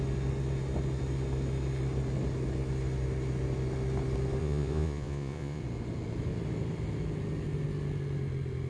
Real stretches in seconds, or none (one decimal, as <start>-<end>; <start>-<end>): 0.0-4.4; 5.6-8.7